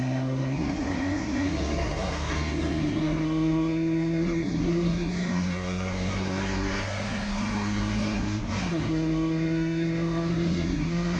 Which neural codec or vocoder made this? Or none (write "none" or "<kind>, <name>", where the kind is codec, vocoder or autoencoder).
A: codec, SNAC